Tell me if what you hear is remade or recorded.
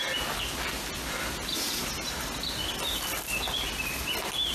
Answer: recorded